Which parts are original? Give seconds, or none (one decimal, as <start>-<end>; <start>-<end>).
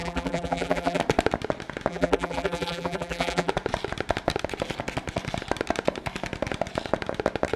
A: 1.0-1.9; 3.5-7.6